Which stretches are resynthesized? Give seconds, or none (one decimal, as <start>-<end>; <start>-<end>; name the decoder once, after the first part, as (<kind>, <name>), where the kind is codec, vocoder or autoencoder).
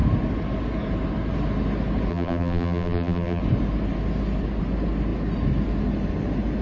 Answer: 2.1-3.4 (vocoder, BigVGAN v2)